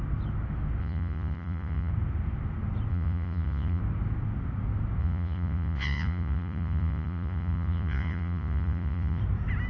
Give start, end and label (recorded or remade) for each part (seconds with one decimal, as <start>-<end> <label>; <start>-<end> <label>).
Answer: 0.0-0.8 recorded; 0.8-1.9 remade; 1.9-2.9 recorded; 2.9-3.8 remade; 3.8-5.0 recorded; 5.0-9.2 remade; 9.2-9.7 recorded